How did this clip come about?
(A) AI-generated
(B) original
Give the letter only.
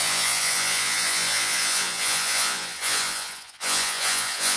A